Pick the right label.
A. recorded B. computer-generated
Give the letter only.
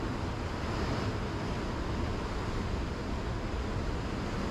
A